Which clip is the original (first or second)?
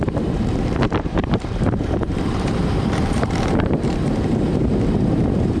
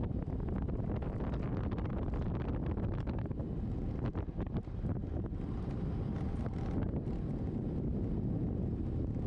second